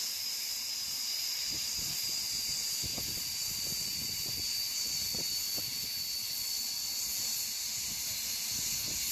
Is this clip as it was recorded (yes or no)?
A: yes